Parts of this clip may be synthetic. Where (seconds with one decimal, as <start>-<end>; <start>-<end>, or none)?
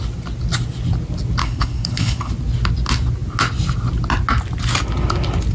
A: 1.4-2.3